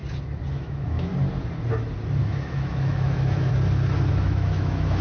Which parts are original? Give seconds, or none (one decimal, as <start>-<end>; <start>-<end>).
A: 0.0-0.5; 1.1-2.2; 3.5-4.1